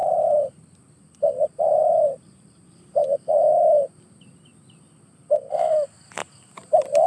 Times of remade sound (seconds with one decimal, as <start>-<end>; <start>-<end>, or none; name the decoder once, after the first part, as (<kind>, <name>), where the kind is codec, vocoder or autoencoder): 0.0-2.8 (vocoder, BigVGAN v2); 6.2-7.1